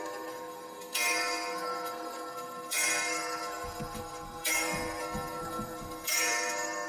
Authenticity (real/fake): fake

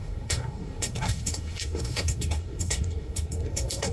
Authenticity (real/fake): fake